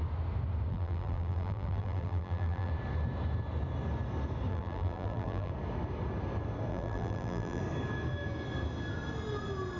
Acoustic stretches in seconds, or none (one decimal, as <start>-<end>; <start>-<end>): 0.0-0.7; 2.7-4.5; 5.5-6.7; 7.6-9.8